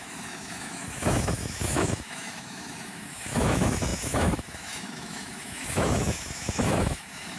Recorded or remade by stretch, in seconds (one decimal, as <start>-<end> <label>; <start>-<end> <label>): 0.0-7.4 remade